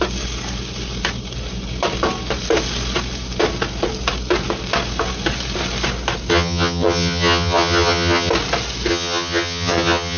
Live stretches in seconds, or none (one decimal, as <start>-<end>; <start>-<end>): 0.0-6.3; 8.3-8.9